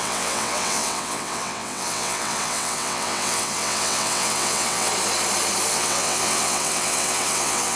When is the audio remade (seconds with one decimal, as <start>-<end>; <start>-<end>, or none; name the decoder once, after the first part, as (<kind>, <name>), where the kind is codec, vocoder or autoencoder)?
0.0-4.9 (vocoder, WaveNeXt); 5.7-7.8